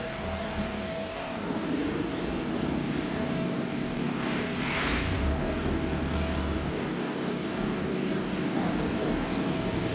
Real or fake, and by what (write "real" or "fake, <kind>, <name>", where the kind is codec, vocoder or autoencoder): fake, codec, DAC